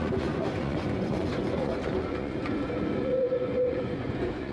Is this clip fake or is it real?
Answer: fake